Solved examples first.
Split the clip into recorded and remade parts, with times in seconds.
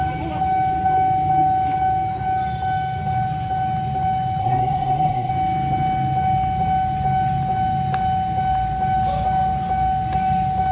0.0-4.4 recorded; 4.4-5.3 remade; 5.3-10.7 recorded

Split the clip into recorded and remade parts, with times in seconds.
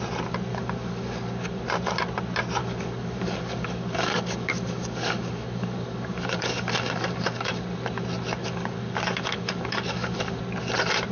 0.0-0.5 recorded; 0.5-1.6 remade; 1.6-2.6 recorded; 2.6-7.6 remade; 7.6-8.4 recorded; 8.4-10.4 remade; 10.4-11.1 recorded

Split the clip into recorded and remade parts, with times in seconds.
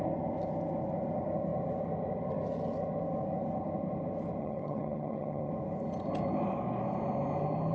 0.0-4.4 recorded; 4.4-5.5 remade; 5.5-7.7 recorded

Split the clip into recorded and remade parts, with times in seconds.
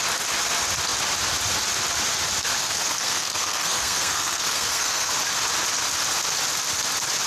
0.0-2.6 recorded; 2.6-5.1 remade; 5.1-7.3 recorded